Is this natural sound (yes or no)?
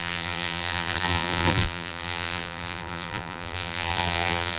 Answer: no